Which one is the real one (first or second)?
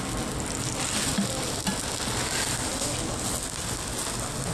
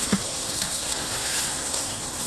first